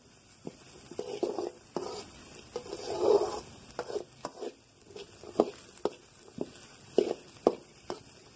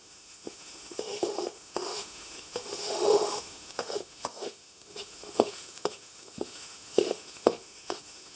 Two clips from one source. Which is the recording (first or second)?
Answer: first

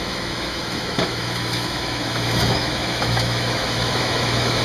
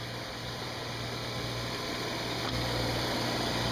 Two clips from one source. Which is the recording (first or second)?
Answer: second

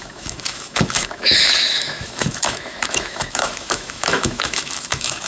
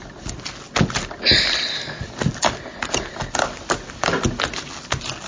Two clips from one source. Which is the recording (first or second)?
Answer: second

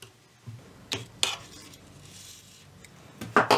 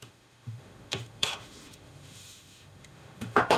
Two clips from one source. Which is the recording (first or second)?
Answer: first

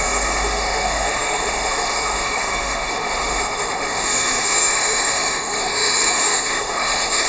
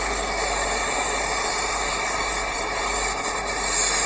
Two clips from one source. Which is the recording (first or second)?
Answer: second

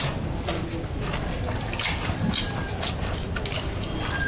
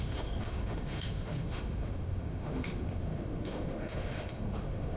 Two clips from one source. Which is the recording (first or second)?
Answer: first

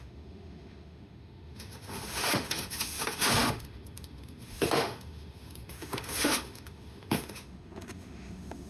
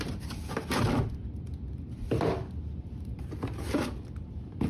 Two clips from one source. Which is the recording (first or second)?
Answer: second